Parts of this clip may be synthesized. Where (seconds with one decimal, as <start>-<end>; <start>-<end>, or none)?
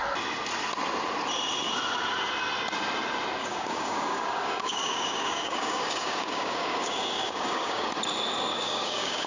3.4-7.9; 8.5-9.3